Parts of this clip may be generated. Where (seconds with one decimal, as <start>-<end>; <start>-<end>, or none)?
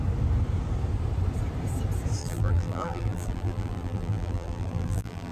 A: 2.2-5.3